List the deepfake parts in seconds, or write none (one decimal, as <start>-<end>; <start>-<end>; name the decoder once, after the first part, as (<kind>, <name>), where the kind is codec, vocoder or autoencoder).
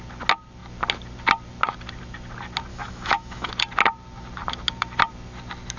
2.7-3.5 (autoencoder, DAC-VAE)